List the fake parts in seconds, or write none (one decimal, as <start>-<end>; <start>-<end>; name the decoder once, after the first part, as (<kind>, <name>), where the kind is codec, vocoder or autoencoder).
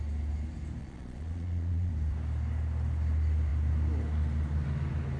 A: 0.8-1.9 (vocoder, Vocos)